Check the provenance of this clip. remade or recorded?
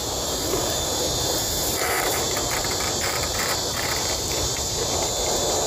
remade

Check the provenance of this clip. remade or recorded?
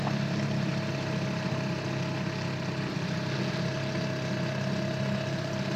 recorded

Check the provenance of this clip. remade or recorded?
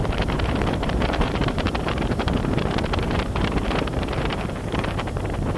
remade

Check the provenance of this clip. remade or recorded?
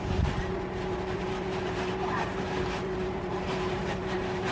remade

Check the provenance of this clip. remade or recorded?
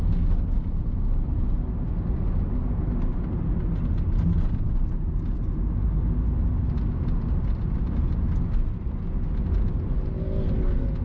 recorded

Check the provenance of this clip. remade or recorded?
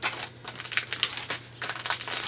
recorded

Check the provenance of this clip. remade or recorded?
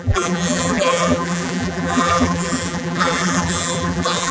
remade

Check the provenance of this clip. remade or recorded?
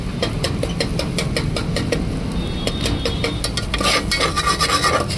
recorded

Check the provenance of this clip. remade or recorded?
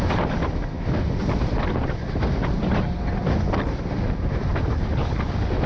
recorded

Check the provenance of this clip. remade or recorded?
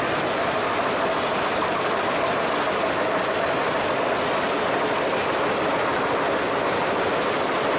recorded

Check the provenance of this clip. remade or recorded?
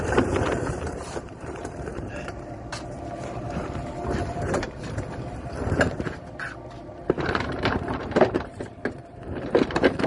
remade